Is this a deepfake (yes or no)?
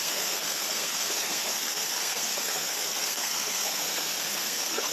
yes